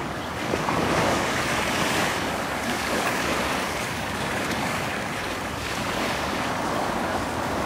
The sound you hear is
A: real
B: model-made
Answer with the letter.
B